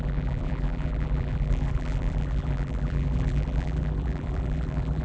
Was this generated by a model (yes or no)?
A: yes